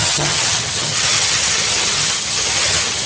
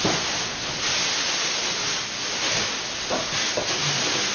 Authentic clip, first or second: second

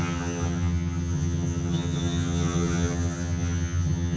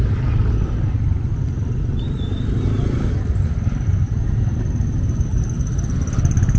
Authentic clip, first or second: second